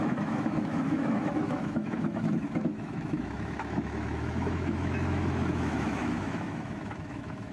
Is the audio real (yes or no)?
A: no